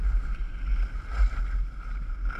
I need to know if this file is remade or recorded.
recorded